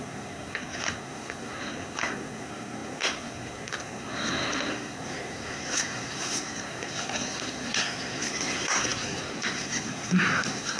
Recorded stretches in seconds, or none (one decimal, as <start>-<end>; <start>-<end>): none